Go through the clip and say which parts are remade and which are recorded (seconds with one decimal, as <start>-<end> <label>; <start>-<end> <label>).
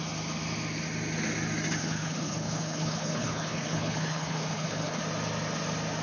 0.0-1.8 recorded; 1.8-5.0 remade; 5.0-6.0 recorded